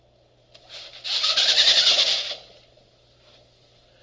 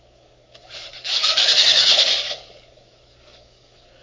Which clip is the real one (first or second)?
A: first